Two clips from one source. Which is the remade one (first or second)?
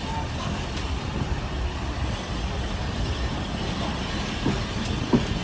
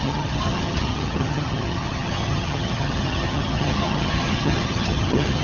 second